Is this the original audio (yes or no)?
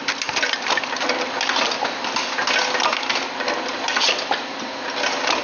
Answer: yes